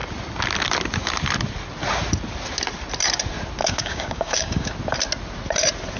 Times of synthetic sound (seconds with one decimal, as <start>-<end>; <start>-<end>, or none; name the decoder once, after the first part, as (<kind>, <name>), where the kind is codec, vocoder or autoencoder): 3.6-4.7 (codec, DAC)